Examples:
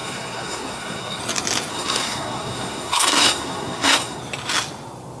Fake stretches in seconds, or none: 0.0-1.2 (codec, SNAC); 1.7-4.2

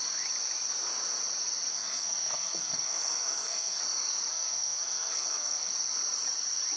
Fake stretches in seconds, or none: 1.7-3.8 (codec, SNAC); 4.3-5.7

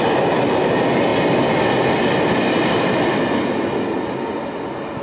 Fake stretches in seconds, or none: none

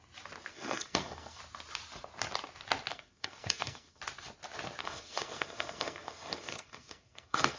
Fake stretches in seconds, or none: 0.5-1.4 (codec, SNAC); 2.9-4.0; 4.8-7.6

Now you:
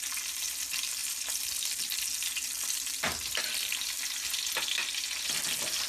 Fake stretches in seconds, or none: none

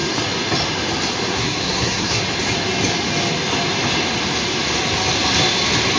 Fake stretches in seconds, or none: 1.3-2.2 (codec, SNAC)